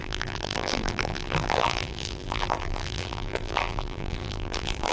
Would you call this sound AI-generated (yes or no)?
yes